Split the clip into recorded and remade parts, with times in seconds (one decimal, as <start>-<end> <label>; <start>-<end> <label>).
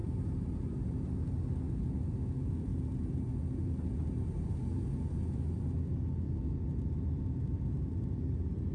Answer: 0.0-8.7 recorded